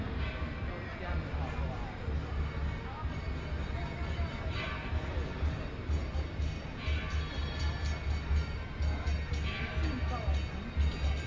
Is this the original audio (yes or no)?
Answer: yes